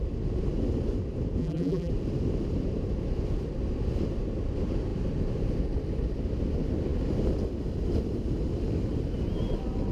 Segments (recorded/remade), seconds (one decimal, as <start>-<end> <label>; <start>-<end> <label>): 0.0-1.4 recorded; 1.4-1.9 remade; 1.9-9.9 recorded